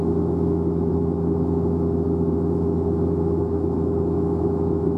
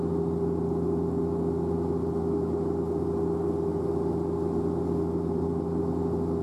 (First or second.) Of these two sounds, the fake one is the first